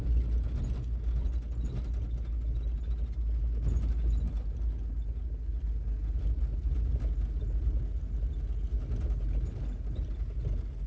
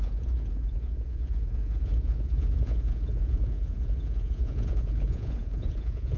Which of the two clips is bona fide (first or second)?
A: first